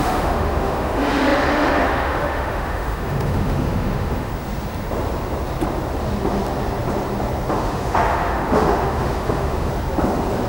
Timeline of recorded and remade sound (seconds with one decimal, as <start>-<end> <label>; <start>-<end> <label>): 0.0-4.3 remade; 4.3-7.5 recorded; 7.5-9.7 remade; 9.7-10.5 recorded